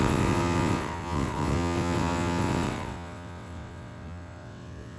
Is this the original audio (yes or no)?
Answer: no